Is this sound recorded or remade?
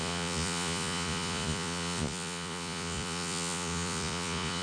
remade